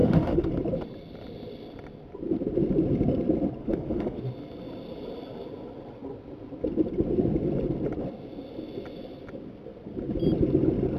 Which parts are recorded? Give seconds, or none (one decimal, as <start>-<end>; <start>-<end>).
0.5-3.6; 4.2-11.0